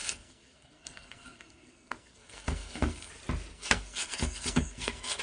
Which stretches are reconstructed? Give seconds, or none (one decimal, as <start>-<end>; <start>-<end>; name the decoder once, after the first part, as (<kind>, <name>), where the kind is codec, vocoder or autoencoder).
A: 0.0-3.1 (codec, SNAC); 3.5-5.2